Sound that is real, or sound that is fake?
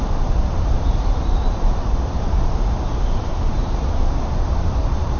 fake